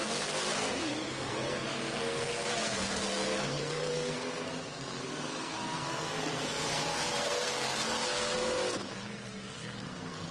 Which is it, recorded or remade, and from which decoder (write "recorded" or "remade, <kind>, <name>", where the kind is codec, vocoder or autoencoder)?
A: remade, codec, SNAC